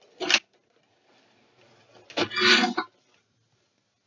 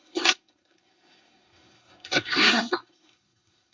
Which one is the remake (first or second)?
second